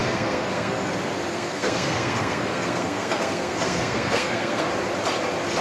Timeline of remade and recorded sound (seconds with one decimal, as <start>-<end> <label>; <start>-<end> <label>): 0.0-0.9 remade; 0.9-1.3 recorded; 1.3-4.7 remade; 4.7-5.6 recorded